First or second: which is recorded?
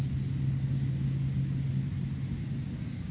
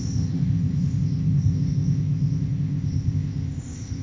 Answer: first